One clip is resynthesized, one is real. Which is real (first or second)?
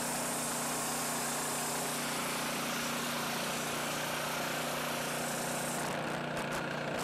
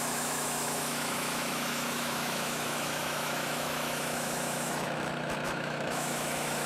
first